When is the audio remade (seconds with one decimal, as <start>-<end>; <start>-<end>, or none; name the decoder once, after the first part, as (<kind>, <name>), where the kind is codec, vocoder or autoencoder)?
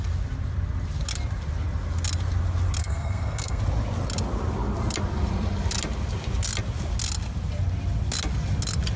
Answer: 2.8-3.6 (codec, SNAC)